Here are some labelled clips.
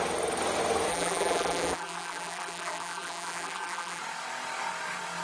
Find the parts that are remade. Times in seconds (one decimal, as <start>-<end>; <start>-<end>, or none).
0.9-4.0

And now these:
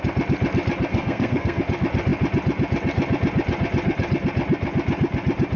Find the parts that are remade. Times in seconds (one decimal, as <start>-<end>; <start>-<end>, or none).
0.9-1.6

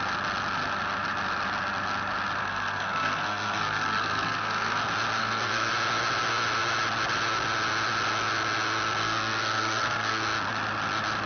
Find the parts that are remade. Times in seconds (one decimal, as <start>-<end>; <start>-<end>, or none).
2.4-4.8; 5.2-5.7; 9.0-10.2

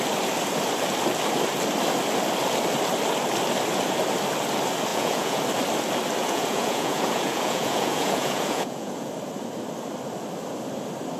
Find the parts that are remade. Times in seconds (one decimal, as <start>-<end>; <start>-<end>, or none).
4.9-5.4; 6.2-9.1

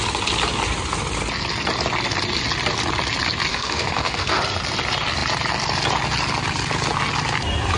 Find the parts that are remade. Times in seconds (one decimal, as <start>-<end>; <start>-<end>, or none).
3.5-4.4

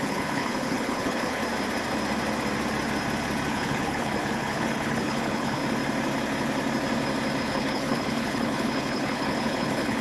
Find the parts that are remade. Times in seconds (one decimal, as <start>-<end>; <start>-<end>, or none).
0.0-1.4; 3.5-5.6; 7.4-10.0

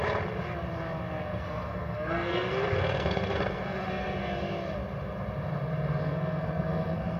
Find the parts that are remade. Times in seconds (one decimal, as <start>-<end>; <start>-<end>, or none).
1.3-4.2; 6.0-7.2